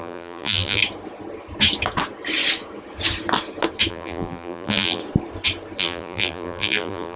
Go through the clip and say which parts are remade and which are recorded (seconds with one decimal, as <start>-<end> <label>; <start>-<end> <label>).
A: 0.0-0.8 remade; 0.8-3.9 recorded; 3.9-5.0 remade; 5.0-5.8 recorded; 5.8-7.2 remade